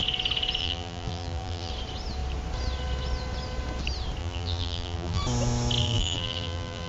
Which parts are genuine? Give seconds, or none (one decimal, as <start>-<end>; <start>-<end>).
0.0-0.6; 1.7-4.2; 5.2-5.8